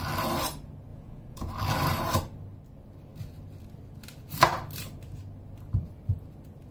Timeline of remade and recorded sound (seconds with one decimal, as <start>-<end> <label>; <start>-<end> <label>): 0.0-0.9 recorded; 0.9-1.5 remade; 1.5-6.7 recorded